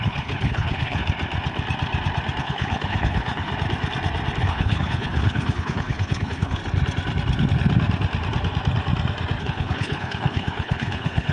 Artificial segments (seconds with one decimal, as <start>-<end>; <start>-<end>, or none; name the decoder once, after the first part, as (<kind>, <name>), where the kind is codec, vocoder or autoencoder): 0.0-1.0 (codec, HILCodec); 2.4-3.5; 4.4-6.6; 9.4-11.3